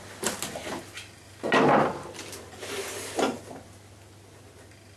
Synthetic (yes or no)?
no